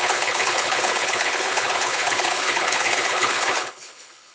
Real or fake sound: fake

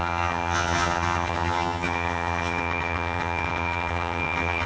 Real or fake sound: fake